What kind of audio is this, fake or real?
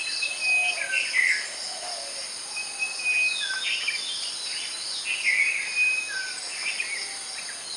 real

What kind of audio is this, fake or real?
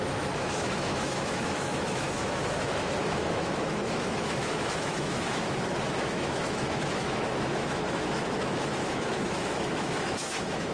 fake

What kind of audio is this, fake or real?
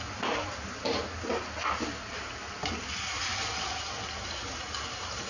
real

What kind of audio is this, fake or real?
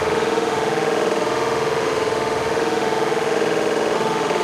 fake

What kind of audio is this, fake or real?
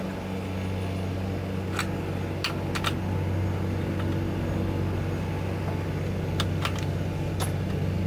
real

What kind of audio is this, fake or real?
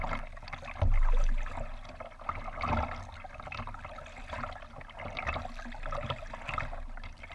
real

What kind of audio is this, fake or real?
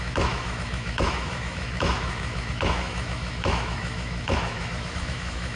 fake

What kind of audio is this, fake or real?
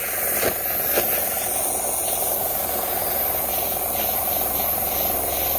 real